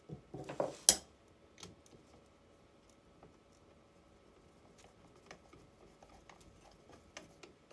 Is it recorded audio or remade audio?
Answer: recorded